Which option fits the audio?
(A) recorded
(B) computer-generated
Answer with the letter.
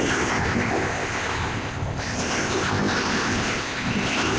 B